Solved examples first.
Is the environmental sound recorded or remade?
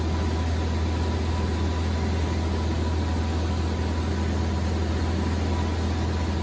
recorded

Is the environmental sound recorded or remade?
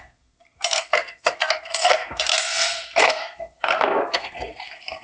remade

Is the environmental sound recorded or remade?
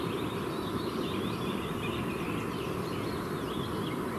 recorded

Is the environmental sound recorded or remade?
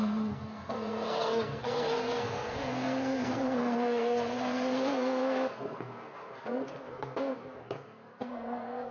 remade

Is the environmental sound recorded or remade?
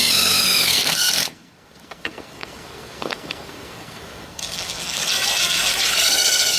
remade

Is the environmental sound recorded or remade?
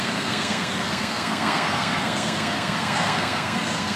remade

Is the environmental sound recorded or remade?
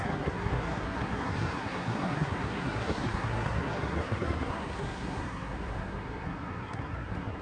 remade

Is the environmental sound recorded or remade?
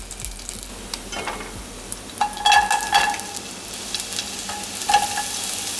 recorded